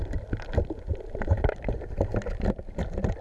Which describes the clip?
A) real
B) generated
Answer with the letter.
A